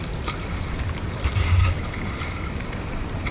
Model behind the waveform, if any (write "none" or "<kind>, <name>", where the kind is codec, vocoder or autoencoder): none